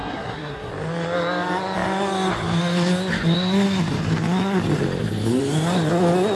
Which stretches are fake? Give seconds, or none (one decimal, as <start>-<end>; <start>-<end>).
0.0-0.7